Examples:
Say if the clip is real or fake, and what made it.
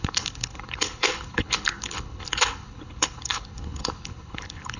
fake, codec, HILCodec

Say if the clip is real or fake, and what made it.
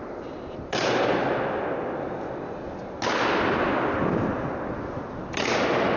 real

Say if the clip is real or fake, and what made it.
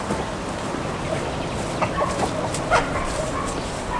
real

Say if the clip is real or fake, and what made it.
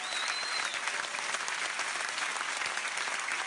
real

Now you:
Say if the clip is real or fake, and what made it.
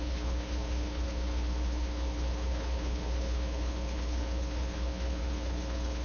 fake, codec, HILCodec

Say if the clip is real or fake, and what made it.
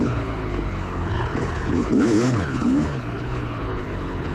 fake, codec, HILCodec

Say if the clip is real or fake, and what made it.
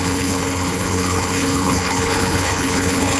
fake, codec, HILCodec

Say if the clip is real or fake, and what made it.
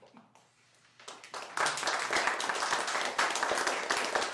real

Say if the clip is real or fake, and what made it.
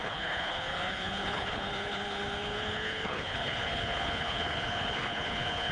fake, codec, HILCodec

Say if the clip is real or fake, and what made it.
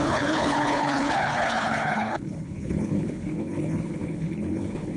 fake, codec, HILCodec